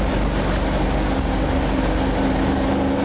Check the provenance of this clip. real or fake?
real